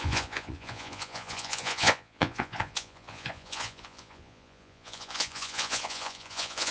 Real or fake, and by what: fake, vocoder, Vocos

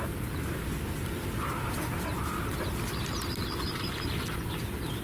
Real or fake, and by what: real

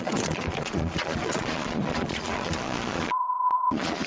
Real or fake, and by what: fake, vocoder, Vocos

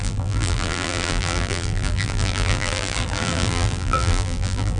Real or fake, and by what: fake, vocoder, BigVGAN v2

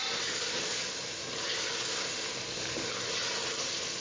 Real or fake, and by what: real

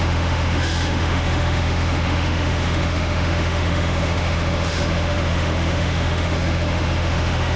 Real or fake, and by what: fake, autoencoder, DAC-VAE